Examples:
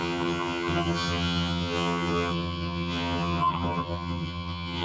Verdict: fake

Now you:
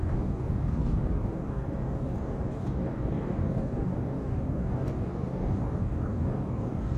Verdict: fake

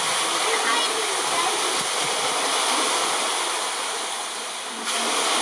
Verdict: real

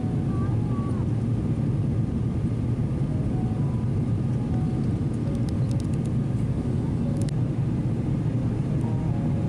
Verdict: real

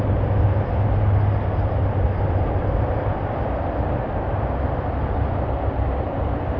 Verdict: real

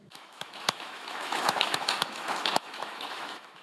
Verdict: fake